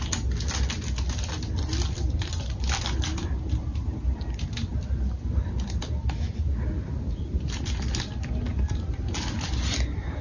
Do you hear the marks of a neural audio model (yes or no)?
no